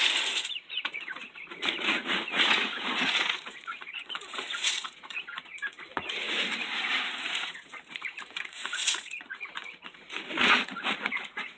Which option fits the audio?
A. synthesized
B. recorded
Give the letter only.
A